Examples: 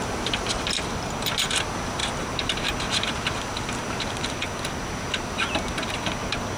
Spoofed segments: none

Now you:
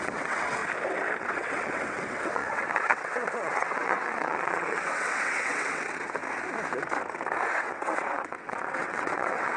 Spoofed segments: 0.0-0.6; 1.2-6.2; 7.6-9.6

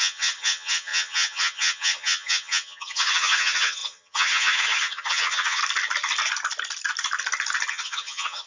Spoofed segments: 0.0-5.6; 7.7-8.5

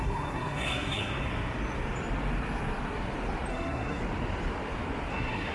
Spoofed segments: 0.0-1.1; 3.5-4.0; 5.1-5.5

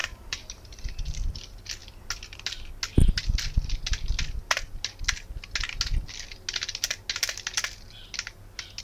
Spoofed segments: 0.0-0.9

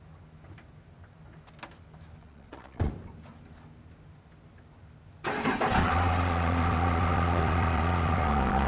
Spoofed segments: 2.2-2.9; 5.8-8.7